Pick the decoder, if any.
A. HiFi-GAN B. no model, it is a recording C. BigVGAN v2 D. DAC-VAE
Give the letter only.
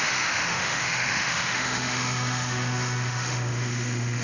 D